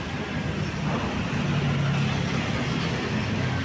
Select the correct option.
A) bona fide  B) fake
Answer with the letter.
A